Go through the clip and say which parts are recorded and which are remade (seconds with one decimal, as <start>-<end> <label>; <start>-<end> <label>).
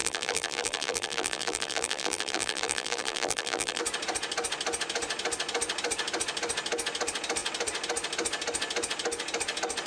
0.0-3.8 remade; 3.8-9.9 recorded